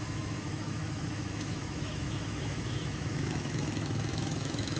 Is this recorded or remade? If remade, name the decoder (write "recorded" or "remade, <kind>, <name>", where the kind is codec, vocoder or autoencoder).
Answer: remade, autoencoder, DAC-VAE